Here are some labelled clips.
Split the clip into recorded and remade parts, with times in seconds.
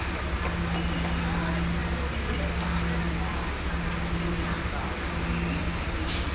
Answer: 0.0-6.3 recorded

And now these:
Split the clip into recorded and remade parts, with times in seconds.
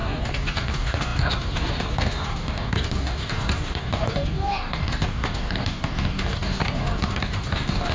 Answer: 0.0-7.9 remade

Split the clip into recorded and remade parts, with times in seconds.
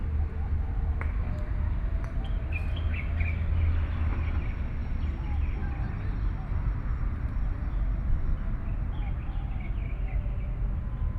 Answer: 0.0-11.2 recorded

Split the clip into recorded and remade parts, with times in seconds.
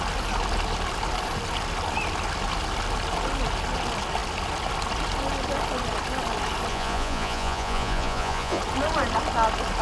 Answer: 0.0-6.7 recorded; 6.7-8.6 remade; 8.6-9.8 recorded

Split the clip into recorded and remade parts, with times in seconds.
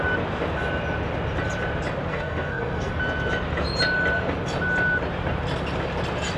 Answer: 0.0-2.1 recorded; 2.1-2.9 remade; 2.9-6.4 recorded